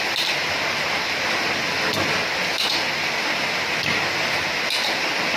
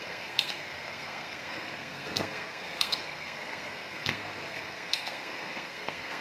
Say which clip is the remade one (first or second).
second